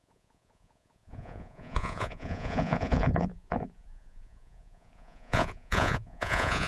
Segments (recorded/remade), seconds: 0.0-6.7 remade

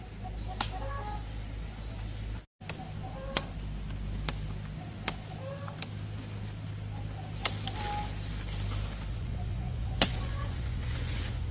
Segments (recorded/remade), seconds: 0.0-9.1 recorded; 9.1-11.5 remade